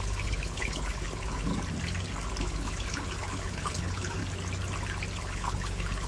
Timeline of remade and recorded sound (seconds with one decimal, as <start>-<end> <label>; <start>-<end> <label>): 0.0-1.5 remade; 1.5-2.4 recorded; 2.4-4.2 remade; 4.2-5.2 recorded; 5.2-6.1 remade